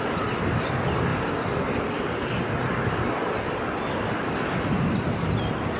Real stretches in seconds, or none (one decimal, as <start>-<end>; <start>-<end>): 0.0-5.8